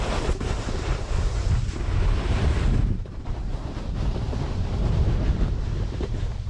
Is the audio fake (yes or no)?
yes